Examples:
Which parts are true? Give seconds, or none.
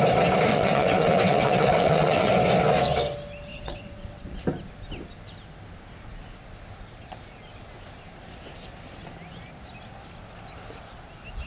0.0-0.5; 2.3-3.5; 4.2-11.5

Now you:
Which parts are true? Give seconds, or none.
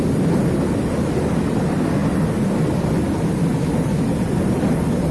0.0-5.1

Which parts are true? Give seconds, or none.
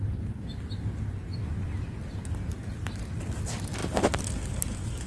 0.0-5.1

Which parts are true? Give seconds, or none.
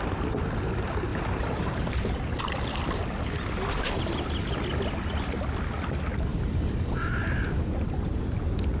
0.0-1.1; 2.4-6.3; 8.2-8.8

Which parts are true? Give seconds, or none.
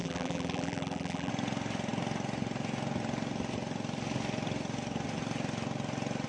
1.3-6.3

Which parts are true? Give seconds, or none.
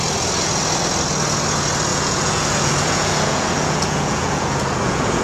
0.0-1.9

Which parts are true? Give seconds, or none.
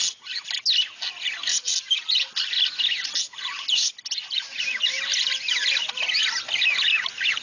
0.0-7.4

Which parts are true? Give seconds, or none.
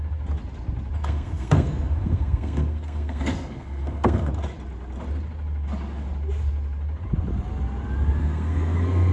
0.0-1.0; 4.3-8.2